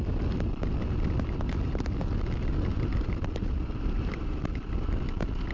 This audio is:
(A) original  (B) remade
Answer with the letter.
A